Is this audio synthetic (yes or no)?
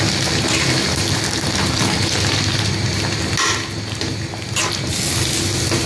no